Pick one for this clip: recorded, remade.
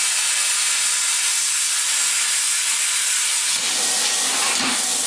recorded